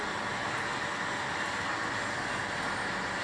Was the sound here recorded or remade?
recorded